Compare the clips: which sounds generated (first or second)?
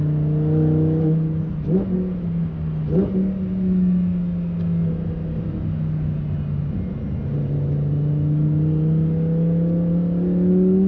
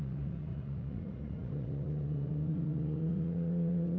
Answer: second